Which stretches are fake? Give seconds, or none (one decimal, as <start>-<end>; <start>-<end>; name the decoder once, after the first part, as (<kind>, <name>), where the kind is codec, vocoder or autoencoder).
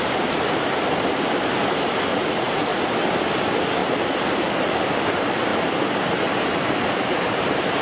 2.1-2.9 (vocoder, Vocos)